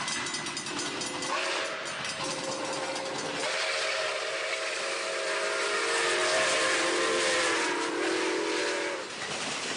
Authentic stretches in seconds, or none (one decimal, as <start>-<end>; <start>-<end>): 0.0-9.8